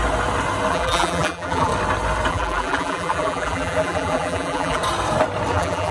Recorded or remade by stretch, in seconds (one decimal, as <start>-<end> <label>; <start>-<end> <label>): 0.0-0.7 recorded; 0.7-1.7 remade; 1.7-2.3 recorded; 2.3-4.8 remade; 4.8-5.5 recorded; 5.5-5.9 remade